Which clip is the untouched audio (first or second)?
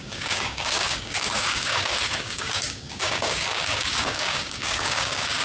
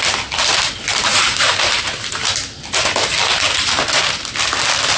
second